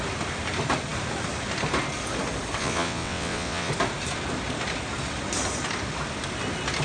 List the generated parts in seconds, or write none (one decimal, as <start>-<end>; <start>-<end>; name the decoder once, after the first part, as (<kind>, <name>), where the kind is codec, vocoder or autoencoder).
2.6-3.7 (vocoder, WaveNeXt)